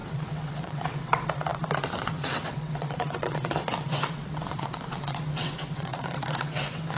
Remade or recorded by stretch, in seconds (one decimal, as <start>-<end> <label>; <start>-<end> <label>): 0.0-7.0 remade